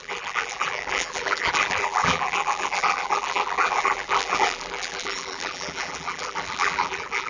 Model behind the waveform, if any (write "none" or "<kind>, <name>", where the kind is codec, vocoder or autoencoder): vocoder, BigVGAN v2